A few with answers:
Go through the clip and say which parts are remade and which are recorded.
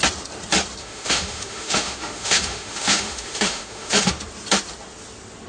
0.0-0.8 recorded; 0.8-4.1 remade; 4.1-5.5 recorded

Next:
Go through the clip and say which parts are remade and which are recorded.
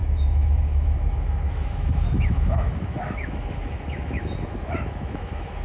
0.0-5.6 remade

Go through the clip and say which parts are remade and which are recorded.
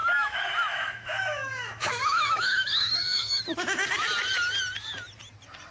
0.0-3.4 remade; 3.4-5.7 recorded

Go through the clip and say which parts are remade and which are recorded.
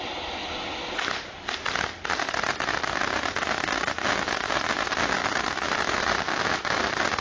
0.0-5.2 recorded; 5.2-5.8 remade; 5.8-6.3 recorded; 6.3-6.8 remade; 6.8-7.2 recorded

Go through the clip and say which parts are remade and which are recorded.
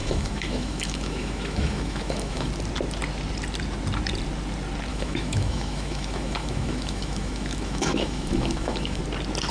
0.0-2.5 remade; 2.5-4.9 recorded; 4.9-9.0 remade; 9.0-9.5 recorded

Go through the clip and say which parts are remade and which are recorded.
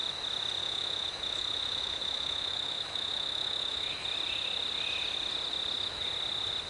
0.0-0.6 recorded; 0.6-3.9 remade; 3.9-6.7 recorded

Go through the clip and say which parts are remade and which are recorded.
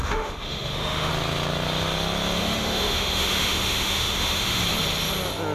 0.0-1.1 remade; 1.1-2.4 recorded; 2.4-4.6 remade; 4.6-5.5 recorded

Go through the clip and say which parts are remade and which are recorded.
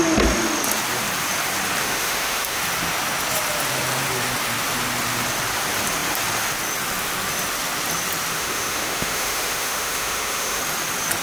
0.0-1.8 recorded; 1.8-2.6 remade; 2.6-8.3 recorded; 8.3-10.6 remade; 10.6-11.2 recorded